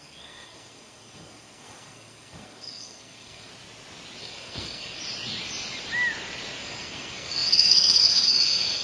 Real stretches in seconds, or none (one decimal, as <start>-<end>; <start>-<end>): 3.5-4.2; 5.0-6.6